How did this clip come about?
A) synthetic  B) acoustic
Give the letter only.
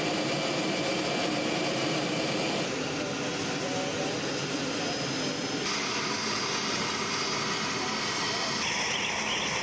B